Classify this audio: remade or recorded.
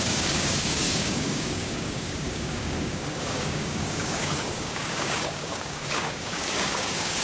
remade